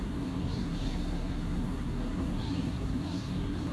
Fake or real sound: fake